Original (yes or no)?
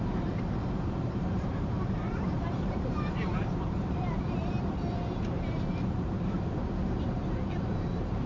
no